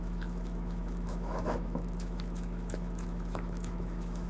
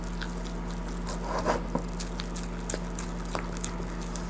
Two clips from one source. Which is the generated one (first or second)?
first